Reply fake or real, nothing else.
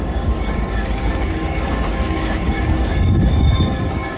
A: fake